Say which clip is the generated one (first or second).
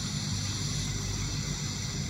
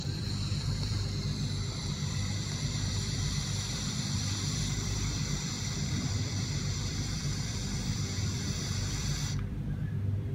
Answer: second